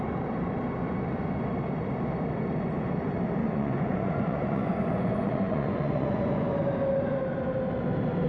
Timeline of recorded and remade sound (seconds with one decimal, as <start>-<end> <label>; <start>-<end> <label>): 0.0-3.4 recorded; 3.4-6.4 remade; 6.4-8.3 recorded